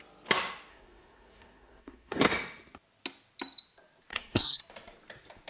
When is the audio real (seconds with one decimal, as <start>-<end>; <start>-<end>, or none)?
0.0-0.7; 2.3-4.1; 4.6-5.5